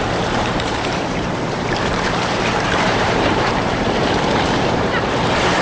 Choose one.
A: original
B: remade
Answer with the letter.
B